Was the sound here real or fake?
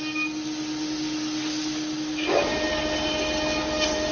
real